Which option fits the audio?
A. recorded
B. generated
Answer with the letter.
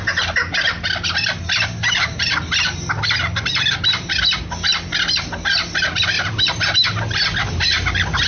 A